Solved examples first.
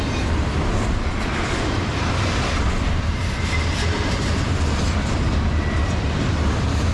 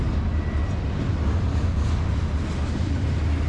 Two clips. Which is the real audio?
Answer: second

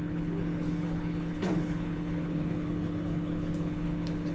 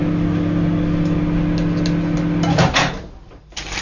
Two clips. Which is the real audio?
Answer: second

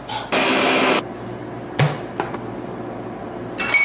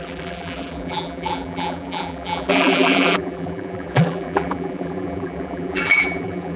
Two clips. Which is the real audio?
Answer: first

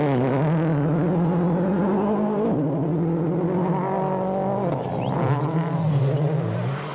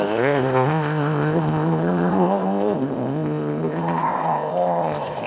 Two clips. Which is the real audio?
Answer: first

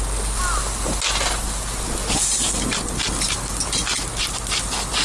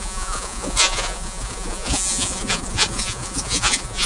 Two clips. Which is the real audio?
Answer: first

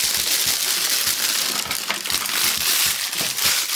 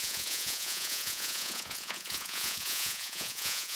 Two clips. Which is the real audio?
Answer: first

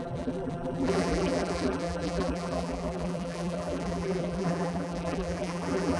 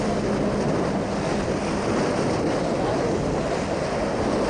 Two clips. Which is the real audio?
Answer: second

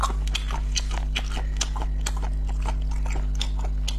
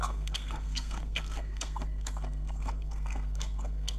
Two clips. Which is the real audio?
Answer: first